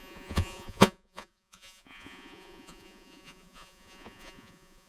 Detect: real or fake fake